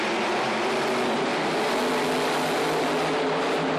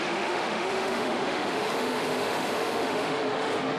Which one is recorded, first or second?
first